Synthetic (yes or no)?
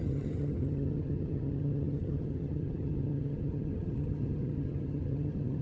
yes